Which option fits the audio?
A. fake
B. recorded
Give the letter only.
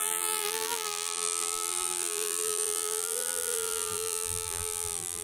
A